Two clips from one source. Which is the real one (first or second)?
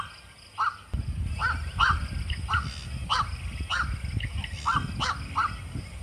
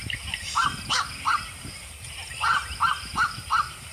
first